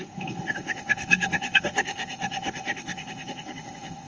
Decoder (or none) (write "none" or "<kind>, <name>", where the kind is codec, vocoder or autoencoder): codec, SNAC